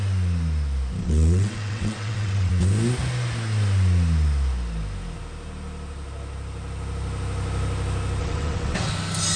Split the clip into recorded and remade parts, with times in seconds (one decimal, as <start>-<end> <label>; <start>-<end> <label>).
0.0-1.0 recorded; 1.0-2.5 remade; 2.5-8.2 recorded; 8.2-8.9 remade; 8.9-9.4 recorded